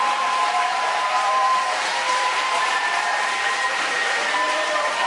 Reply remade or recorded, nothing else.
remade